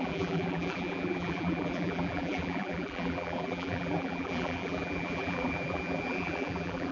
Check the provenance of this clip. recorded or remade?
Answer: remade